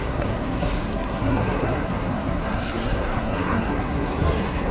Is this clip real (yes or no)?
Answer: no